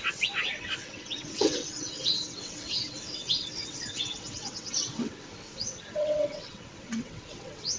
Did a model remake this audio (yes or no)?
yes